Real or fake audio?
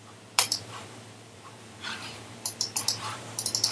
fake